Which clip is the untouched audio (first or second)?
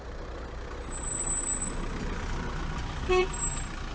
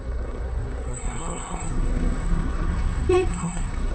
first